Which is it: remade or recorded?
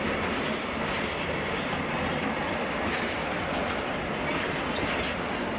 recorded